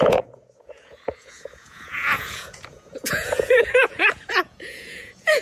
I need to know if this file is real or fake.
fake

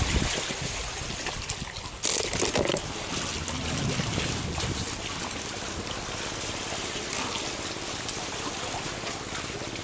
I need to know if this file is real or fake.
real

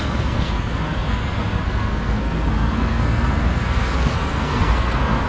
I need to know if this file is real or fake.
fake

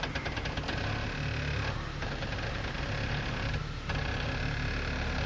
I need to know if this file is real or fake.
real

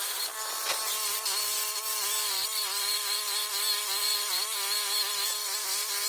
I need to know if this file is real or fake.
real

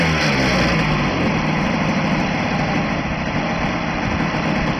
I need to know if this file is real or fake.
real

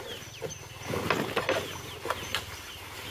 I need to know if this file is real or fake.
real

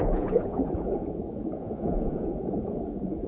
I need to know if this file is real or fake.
fake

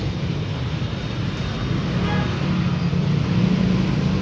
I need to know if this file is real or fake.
real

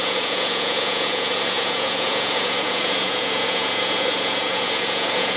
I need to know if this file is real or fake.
fake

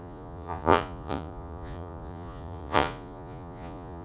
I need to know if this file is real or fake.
fake